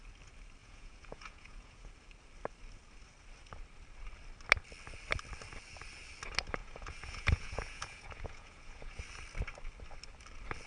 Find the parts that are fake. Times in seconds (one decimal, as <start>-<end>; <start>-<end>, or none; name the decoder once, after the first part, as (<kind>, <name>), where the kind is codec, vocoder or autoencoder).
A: 0.6-1.9 (vocoder, Vocos); 6.6-9.0